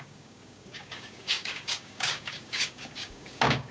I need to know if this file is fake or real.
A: fake